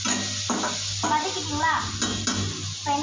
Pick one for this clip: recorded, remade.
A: recorded